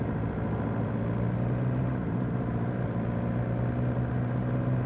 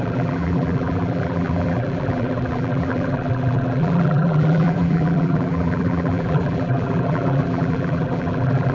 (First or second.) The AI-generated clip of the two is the second